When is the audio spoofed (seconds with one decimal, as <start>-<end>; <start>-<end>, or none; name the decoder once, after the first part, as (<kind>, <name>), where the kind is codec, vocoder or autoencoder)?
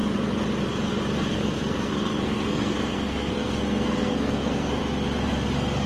1.3-4.8 (codec, SNAC)